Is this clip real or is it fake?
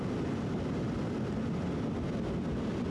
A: real